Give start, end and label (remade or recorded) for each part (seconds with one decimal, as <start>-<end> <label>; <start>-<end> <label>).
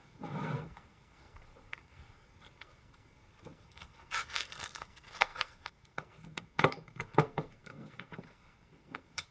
0.0-9.3 remade